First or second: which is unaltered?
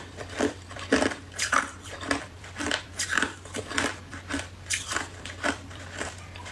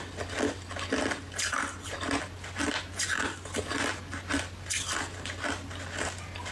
second